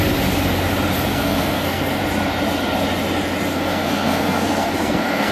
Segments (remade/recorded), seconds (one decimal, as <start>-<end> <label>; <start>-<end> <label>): 0.0-1.1 recorded; 1.1-2.0 remade; 2.0-3.5 recorded; 3.5-5.3 remade